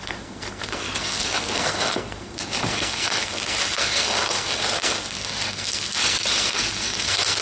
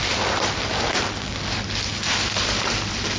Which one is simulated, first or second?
first